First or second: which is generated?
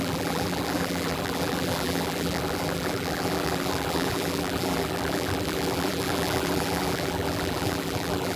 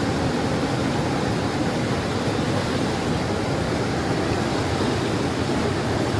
first